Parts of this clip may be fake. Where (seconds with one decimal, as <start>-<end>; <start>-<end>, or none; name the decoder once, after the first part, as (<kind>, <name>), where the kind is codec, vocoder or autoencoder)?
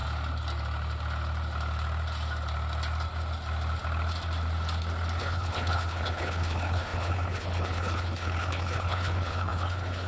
5.2-10.1 (codec, HILCodec)